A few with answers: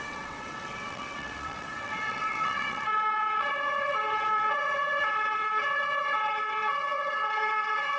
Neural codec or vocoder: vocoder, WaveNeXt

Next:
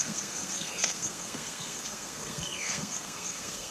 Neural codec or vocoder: codec, SNAC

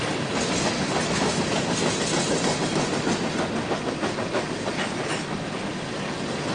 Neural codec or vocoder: none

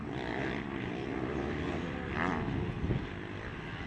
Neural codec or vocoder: none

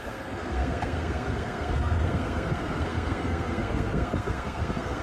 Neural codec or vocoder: codec, SNAC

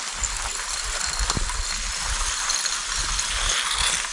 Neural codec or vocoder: none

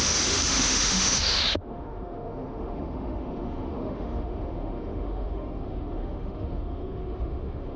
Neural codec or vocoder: autoencoder, DAC-VAE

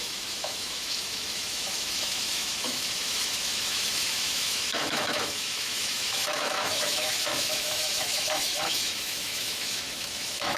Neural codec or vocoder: autoencoder, DAC-VAE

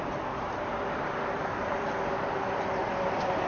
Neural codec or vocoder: vocoder, BigVGAN v2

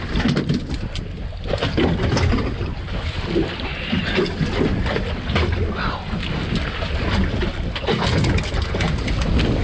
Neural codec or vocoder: none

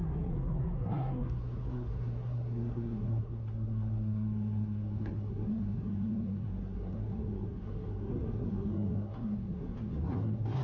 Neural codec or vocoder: codec, SNAC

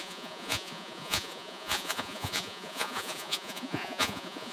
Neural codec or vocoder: vocoder, Vocos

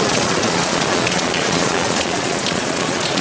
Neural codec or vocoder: vocoder, Vocos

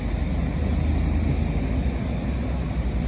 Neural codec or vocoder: none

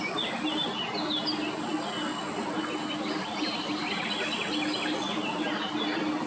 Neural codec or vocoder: none